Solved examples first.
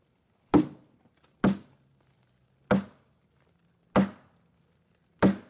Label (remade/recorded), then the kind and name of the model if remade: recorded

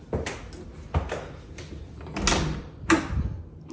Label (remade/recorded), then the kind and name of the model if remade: recorded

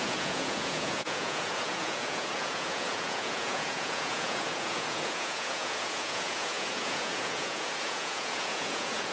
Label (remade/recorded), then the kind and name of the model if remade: remade, vocoder, Vocos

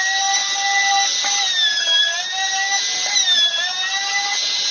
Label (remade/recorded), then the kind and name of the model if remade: recorded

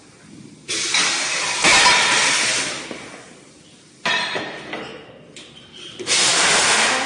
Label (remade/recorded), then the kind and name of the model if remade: recorded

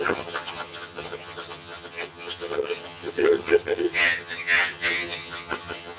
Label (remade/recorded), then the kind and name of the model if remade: remade, vocoder, HiFi-GAN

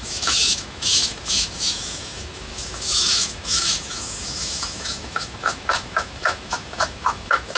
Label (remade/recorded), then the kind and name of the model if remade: remade, autoencoder, DAC-VAE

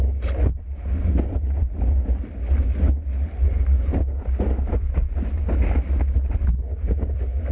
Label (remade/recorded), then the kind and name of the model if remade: recorded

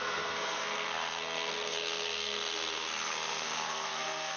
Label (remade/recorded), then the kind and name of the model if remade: remade, codec, SNAC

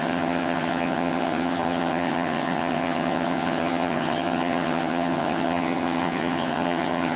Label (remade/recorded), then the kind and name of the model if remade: remade, vocoder, HiFi-GAN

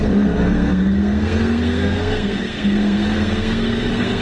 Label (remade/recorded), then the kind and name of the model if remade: remade, codec, SNAC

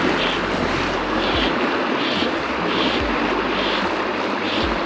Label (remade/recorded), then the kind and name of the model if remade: recorded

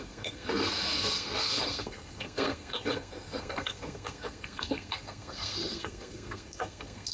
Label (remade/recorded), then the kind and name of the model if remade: remade, codec, SNAC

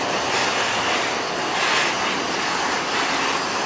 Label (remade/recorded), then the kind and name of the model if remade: recorded